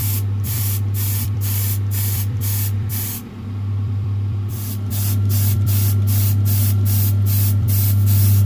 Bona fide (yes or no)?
no